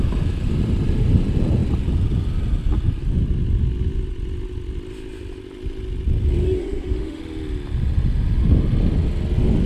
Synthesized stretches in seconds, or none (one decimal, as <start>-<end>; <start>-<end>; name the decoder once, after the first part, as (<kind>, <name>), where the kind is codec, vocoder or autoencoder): 6.4-7.2 (autoencoder, DAC-VAE)